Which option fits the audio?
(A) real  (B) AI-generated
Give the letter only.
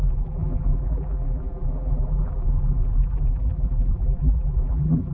B